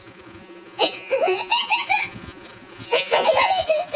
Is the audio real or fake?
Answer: fake